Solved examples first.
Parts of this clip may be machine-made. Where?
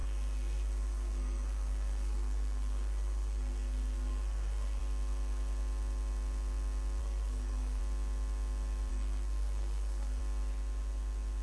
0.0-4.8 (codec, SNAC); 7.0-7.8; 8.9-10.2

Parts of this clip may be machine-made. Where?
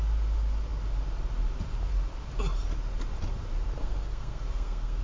3.8-5.0 (codec, SNAC)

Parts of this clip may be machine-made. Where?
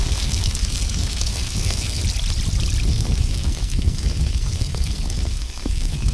0.0-2.0 (codec, SNAC); 2.9-6.1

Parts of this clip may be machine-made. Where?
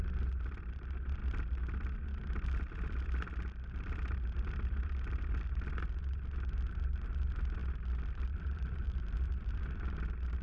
none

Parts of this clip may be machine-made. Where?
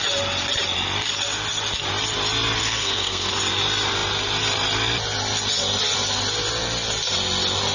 2.6-3.3 (codec, SNAC)